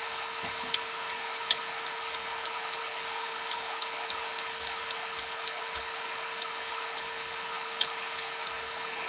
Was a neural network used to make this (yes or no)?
yes